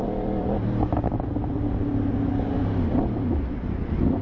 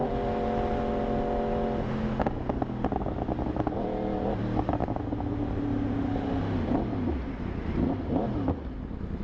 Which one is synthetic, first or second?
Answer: first